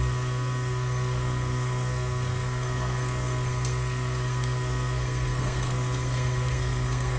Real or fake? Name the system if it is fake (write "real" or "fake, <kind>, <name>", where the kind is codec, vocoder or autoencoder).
fake, codec, SNAC